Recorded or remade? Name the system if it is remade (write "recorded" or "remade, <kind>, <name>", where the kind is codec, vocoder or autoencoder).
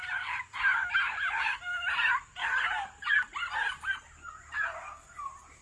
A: recorded